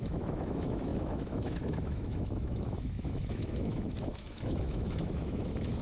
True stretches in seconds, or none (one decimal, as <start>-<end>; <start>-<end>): none